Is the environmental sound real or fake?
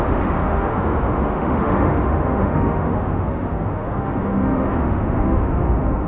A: fake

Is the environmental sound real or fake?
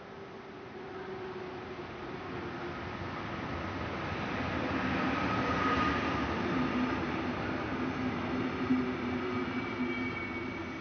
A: real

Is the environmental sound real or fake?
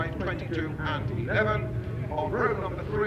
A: real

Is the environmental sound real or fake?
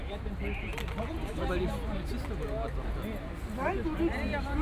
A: real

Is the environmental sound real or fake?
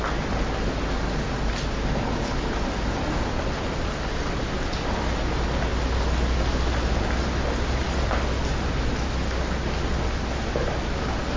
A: real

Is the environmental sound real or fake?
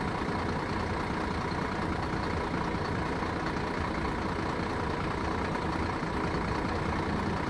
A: real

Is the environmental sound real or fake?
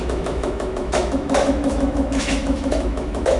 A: fake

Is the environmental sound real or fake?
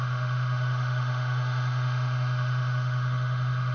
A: fake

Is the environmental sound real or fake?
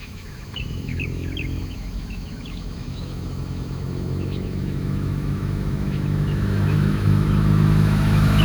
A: fake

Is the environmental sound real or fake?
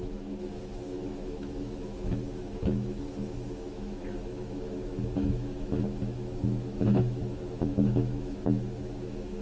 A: fake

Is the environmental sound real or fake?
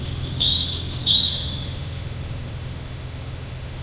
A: fake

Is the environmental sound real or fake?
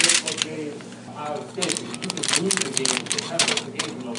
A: real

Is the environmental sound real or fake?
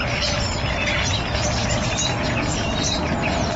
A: real